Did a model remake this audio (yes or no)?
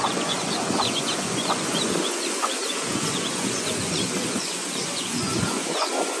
yes